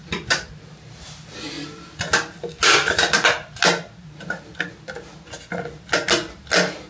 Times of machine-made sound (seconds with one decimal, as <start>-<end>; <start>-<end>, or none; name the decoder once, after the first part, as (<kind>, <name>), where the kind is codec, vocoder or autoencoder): none